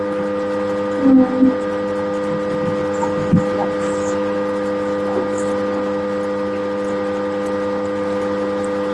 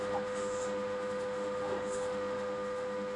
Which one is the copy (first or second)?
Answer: second